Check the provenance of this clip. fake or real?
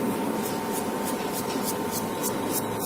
real